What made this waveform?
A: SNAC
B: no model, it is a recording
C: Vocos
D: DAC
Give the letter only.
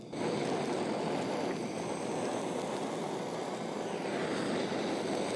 B